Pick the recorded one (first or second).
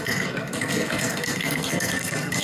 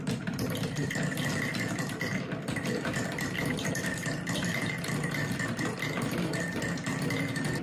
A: second